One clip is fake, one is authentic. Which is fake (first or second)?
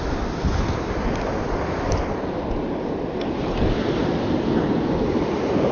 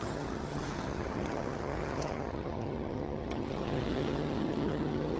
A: second